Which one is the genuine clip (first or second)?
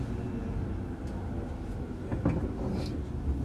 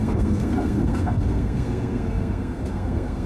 first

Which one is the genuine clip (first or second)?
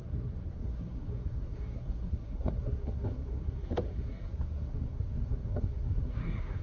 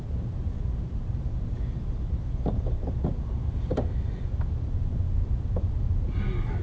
second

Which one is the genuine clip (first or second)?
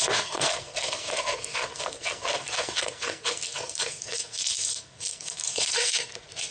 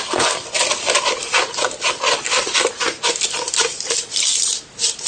second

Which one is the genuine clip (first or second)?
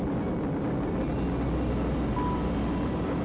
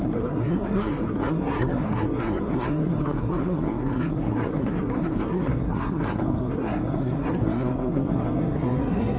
first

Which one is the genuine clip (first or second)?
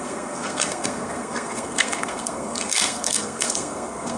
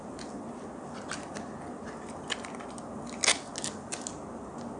second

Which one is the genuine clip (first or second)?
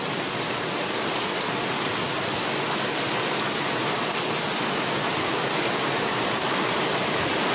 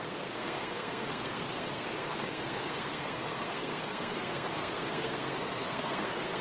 first